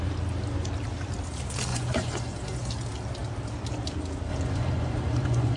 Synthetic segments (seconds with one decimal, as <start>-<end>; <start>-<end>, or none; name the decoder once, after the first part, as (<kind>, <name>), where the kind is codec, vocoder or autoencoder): 1.7-2.7 (vocoder, Vocos); 4.3-5.6